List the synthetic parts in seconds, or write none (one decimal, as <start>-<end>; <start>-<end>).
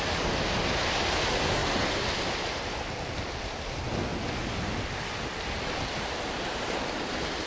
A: none